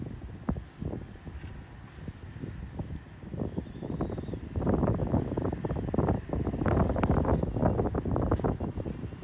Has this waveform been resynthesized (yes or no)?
no